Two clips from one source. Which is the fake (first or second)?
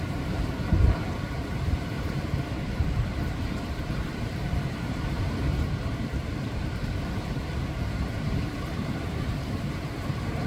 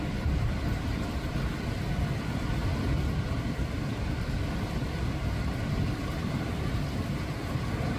first